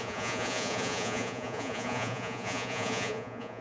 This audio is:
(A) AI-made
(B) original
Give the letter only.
A